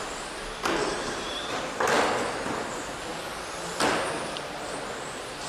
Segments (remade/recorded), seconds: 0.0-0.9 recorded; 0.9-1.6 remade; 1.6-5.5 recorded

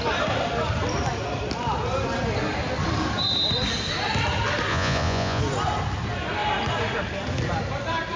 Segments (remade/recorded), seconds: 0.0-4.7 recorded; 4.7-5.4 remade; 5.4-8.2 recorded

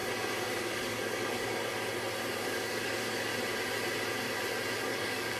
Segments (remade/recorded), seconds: 0.0-0.6 recorded; 0.6-1.7 remade; 1.7-2.4 recorded; 2.4-3.3 remade; 3.3-4.8 recorded; 4.8-5.4 remade

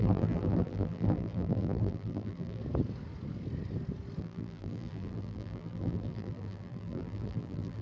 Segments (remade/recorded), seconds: 0.0-2.6 remade; 2.6-4.2 recorded; 4.2-7.8 remade

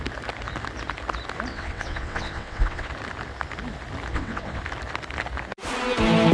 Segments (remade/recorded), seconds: 0.0-1.5 recorded; 1.5-2.9 remade; 2.9-4.1 recorded; 4.1-4.6 remade; 4.6-6.3 recorded

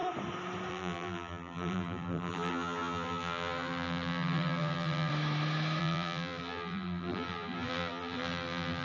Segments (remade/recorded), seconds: 0.0-0.7 recorded; 0.7-5.1 remade; 5.1-5.8 recorded; 5.8-8.8 remade